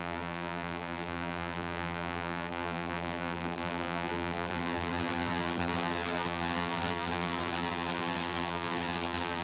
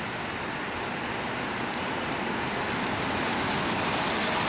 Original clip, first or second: second